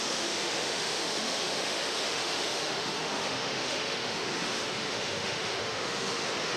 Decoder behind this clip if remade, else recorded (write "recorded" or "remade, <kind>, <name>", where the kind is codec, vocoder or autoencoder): remade, autoencoder, DAC-VAE